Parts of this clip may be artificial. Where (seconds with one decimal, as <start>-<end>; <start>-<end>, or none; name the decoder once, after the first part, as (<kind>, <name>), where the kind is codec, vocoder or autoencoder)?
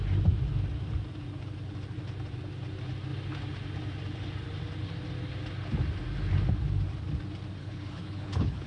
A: 7.6-8.7 (codec, HILCodec)